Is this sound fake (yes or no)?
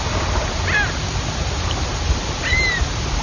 no